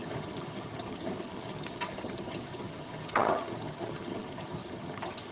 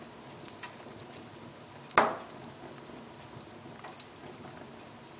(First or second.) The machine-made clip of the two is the first